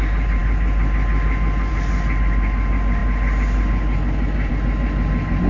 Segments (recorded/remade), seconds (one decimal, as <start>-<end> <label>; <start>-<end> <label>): 0.0-5.5 recorded

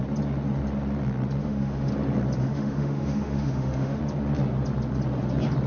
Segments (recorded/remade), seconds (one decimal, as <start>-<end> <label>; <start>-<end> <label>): 0.0-1.4 recorded; 1.4-1.9 remade; 1.9-2.4 recorded; 2.4-4.0 remade; 4.0-5.7 recorded